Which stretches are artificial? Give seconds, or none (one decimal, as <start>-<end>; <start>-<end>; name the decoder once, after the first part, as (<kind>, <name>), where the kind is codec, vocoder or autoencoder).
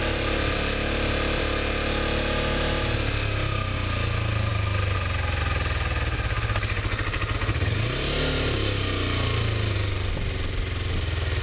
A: none